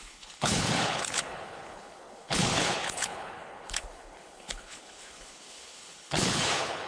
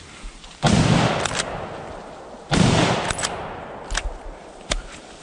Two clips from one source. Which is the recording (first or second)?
second